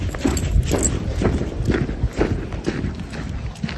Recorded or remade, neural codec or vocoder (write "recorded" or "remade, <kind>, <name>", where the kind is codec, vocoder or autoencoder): recorded